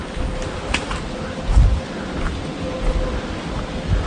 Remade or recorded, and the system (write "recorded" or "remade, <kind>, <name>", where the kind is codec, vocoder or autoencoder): recorded